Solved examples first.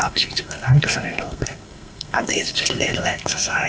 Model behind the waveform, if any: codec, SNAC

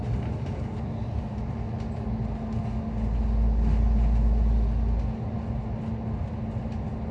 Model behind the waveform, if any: none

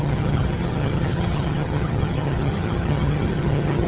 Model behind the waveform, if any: vocoder, HiFi-GAN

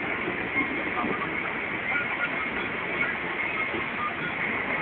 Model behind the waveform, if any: none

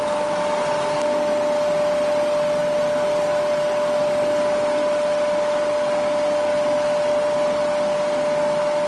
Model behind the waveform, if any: none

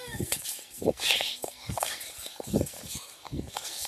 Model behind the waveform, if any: codec, SNAC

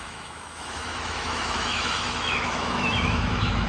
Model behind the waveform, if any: autoencoder, DAC-VAE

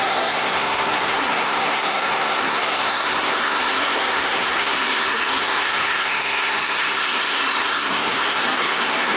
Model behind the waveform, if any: codec, SNAC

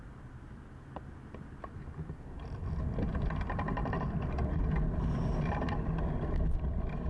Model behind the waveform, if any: none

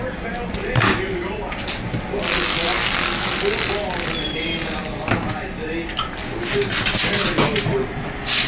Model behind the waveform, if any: none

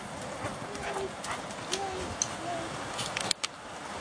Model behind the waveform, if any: none